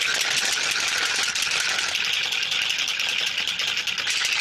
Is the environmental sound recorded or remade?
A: recorded